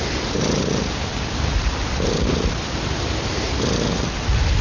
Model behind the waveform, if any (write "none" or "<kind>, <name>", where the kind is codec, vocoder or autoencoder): vocoder, BigVGAN v2